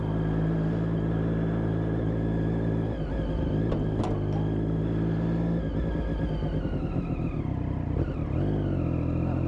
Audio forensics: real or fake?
real